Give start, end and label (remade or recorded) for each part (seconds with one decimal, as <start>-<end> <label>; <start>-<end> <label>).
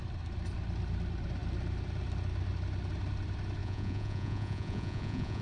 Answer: 0.0-3.6 recorded; 3.6-5.4 remade